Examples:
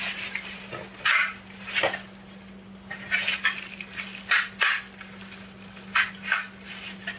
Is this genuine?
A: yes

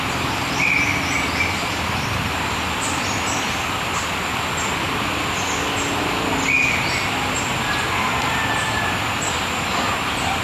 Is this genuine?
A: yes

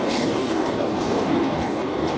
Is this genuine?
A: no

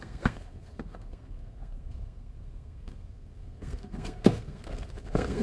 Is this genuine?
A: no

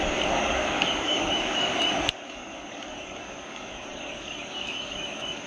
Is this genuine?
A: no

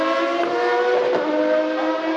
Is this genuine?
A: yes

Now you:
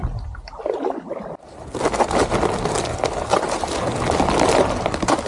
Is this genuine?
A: yes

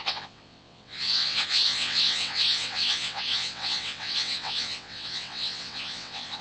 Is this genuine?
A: no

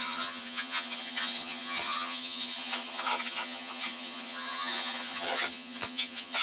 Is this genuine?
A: no